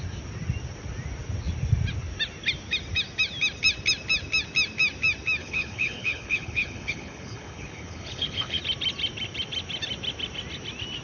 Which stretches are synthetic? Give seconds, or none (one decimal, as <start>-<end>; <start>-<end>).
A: 5.4-8.6

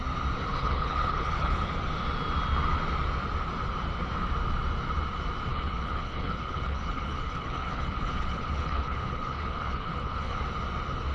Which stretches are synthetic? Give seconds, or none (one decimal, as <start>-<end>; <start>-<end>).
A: 0.5-1.7; 5.5-10.4

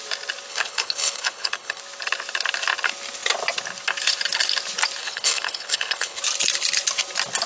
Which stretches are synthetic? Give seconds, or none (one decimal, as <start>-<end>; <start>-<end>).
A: 0.5-1.8; 5.0-6.2

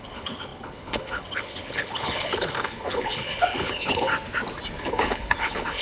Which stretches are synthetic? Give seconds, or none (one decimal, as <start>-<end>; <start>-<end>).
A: 0.0-4.1; 4.8-5.8